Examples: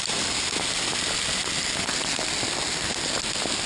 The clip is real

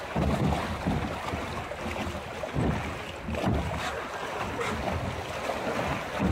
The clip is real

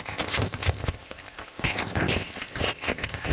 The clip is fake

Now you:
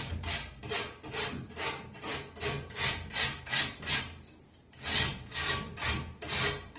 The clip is real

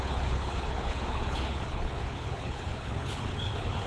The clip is fake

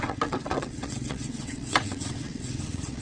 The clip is fake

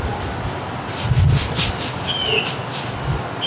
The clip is real